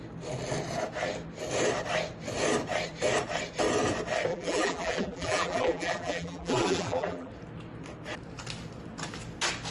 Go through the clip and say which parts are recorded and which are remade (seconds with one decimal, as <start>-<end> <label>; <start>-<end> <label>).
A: 0.0-4.3 recorded; 4.3-7.3 remade; 7.3-9.7 recorded